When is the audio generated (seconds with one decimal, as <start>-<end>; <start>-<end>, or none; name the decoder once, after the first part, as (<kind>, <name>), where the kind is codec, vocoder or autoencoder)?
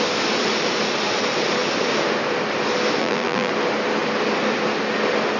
3.0-3.5 (vocoder, BigVGAN v2)